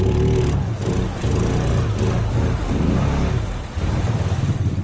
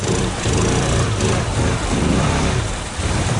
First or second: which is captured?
first